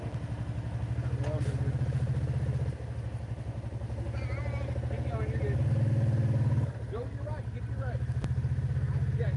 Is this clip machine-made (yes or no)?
no